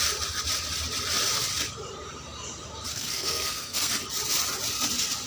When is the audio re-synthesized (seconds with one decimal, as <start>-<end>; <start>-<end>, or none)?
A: 2.9-3.9